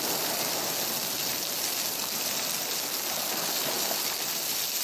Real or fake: real